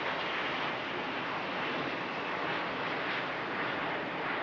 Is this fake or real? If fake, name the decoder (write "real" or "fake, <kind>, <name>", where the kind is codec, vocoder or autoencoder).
real